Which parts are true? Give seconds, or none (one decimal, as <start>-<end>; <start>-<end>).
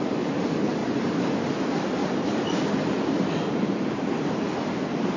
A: 0.0-0.8; 1.3-2.0